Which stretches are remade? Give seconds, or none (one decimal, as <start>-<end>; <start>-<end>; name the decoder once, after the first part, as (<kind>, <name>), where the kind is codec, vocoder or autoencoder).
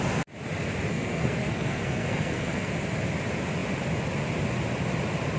0.9-2.7 (codec, SNAC)